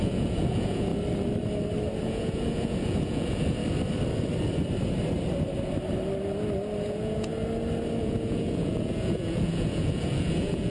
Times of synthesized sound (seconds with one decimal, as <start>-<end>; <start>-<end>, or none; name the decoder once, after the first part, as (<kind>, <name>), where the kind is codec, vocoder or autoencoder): 0.0-0.9 (vocoder, Vocos); 2.0-3.6; 6.8-7.3; 8.0-10.7